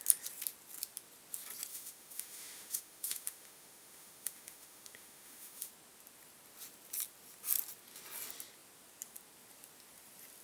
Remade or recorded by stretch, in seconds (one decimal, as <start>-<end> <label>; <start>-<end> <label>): 0.0-1.7 recorded; 1.7-5.7 remade; 5.7-10.4 recorded